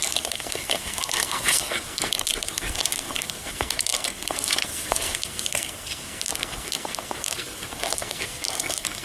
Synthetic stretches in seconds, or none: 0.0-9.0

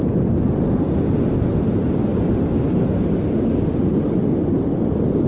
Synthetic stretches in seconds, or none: none